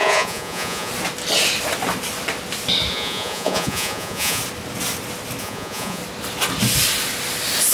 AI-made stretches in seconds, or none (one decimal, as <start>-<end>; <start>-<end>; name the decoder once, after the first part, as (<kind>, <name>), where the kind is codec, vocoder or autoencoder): 0.0-0.9 (vocoder, Vocos); 2.9-4.4; 5.4-6.0